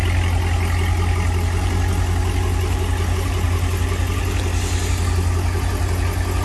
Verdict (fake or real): real